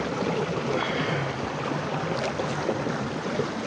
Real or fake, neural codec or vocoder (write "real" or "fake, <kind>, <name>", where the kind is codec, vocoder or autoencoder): real